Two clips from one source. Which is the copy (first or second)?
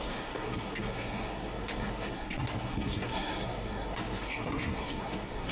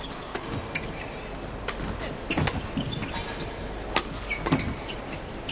first